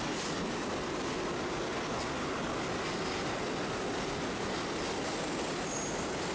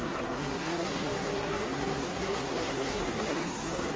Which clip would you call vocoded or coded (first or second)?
second